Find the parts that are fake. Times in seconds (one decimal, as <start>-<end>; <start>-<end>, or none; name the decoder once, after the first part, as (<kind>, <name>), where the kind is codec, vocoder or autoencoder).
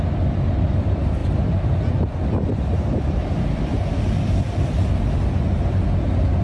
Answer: none